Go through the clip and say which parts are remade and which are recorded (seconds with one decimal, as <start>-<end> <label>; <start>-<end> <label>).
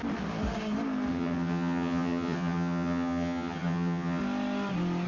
0.0-1.1 recorded; 1.1-4.2 remade; 4.2-5.1 recorded